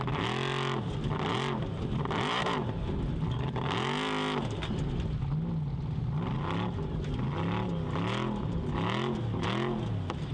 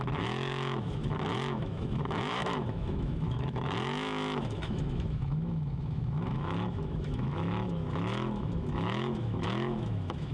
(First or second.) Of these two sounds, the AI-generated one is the second